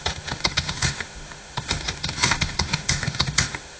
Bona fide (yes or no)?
no